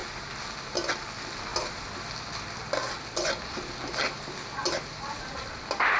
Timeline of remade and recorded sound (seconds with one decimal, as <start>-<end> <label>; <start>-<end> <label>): 0.0-6.0 recorded